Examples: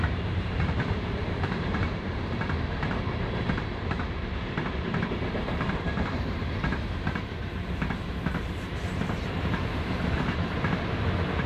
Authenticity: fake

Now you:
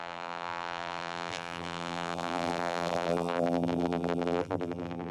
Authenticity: fake